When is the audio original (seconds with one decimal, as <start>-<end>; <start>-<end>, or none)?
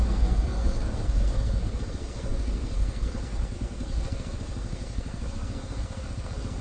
none